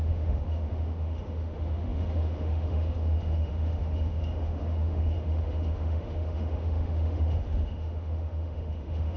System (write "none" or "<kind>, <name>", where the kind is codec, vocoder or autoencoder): autoencoder, DAC-VAE